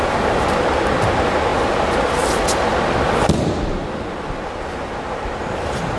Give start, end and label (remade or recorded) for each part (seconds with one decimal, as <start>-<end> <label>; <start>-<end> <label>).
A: 0.0-6.0 recorded